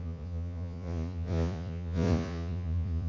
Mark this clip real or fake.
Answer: fake